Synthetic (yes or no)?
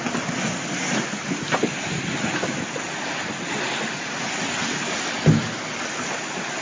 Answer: no